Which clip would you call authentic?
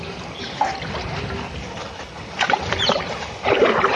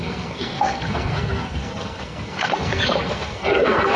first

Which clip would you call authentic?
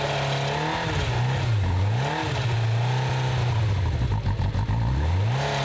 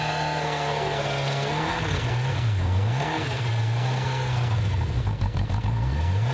first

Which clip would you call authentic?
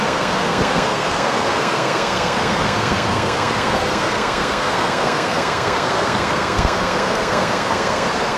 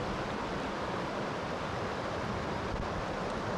second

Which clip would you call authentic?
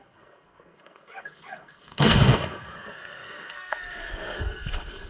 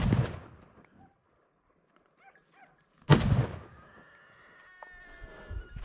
second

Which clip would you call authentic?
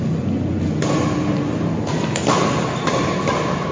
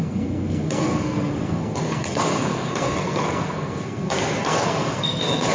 first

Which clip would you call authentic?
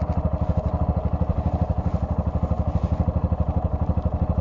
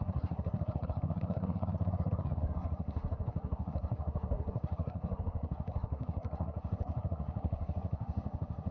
first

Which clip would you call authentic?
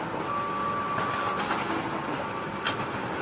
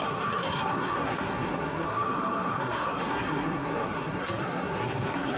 first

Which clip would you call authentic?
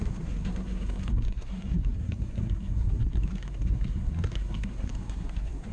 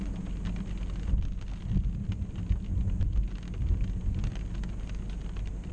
second